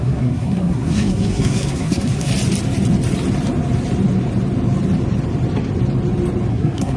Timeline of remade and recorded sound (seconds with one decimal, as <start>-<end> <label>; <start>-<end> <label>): 0.0-2.3 remade; 2.3-6.5 recorded; 6.5-7.0 remade